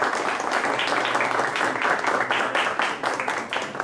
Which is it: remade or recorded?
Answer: recorded